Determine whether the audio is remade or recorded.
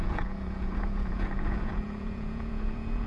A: remade